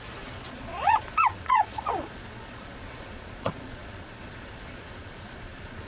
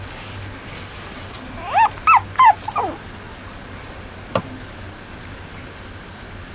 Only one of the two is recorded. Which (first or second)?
second